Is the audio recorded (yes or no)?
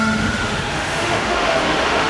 no